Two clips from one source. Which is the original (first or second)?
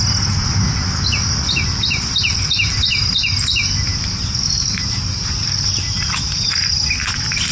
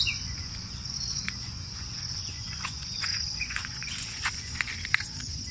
first